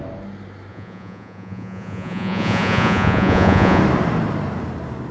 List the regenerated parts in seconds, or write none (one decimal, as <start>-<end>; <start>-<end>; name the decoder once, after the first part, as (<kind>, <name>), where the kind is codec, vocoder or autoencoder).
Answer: 0.7-3.8 (vocoder, Vocos)